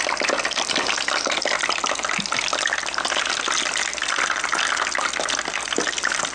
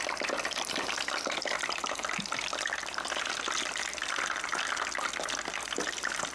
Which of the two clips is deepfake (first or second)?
second